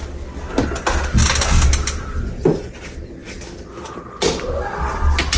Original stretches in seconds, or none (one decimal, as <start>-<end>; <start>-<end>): 0.0-3.2; 4.0-5.4